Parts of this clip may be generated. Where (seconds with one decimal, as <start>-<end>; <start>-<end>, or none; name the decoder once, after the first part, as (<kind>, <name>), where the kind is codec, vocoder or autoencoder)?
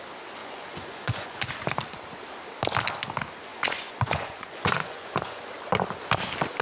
0.4-1.5 (vocoder, Vocos); 3.5-5.4